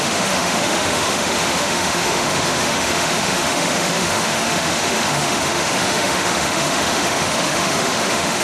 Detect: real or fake fake